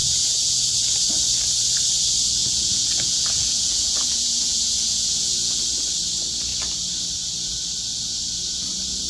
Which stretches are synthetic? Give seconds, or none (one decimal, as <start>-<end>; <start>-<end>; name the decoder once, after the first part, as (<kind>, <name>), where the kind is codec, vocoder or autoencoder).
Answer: 0.0-0.6 (vocoder, Vocos); 2.4-5.6